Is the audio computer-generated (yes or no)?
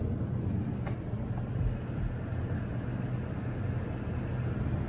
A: no